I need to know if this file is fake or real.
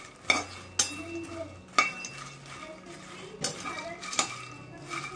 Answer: real